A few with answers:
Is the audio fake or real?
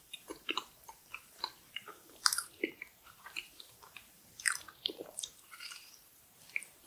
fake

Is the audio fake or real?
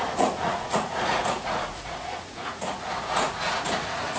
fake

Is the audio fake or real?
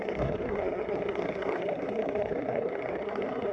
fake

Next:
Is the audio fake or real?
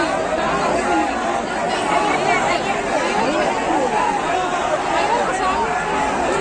real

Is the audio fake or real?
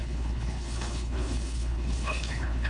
fake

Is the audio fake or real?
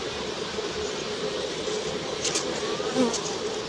real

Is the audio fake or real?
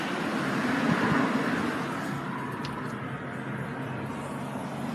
real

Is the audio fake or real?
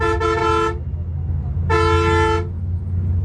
real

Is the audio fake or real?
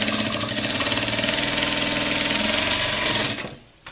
real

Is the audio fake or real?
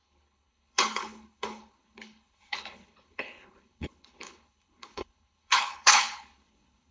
fake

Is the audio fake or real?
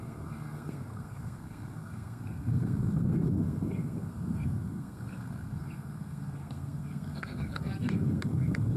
fake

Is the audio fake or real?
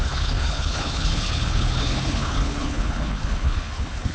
fake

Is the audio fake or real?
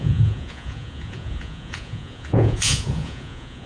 fake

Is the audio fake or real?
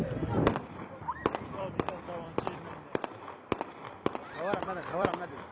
fake